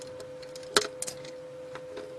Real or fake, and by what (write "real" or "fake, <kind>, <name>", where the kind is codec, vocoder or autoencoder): real